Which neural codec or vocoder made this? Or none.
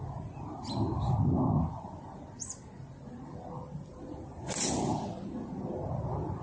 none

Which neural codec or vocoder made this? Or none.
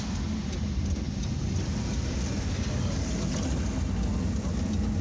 none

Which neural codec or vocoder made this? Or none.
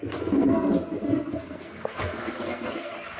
codec, SNAC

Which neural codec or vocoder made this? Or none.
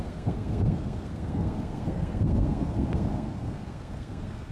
codec, SNAC